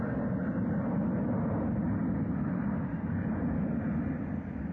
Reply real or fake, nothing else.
real